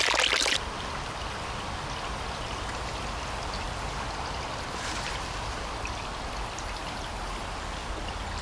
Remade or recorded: recorded